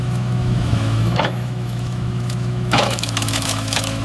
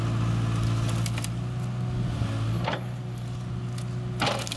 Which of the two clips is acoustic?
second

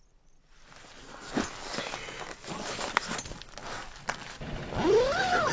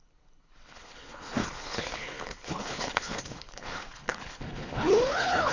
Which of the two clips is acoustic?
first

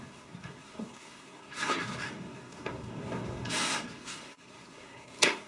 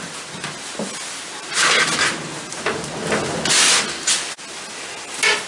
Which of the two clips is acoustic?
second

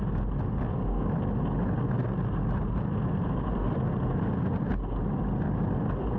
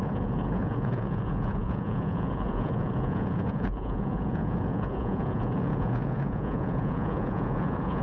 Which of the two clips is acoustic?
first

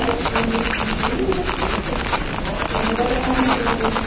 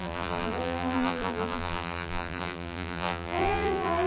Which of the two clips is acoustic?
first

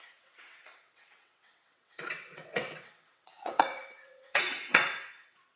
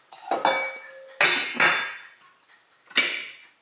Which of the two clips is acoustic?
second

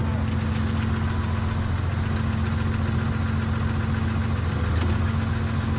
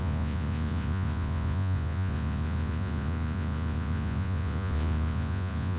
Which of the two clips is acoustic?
first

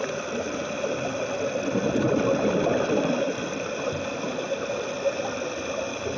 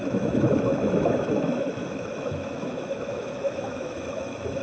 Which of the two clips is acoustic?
first